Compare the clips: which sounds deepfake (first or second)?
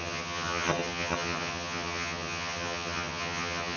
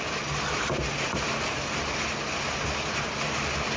first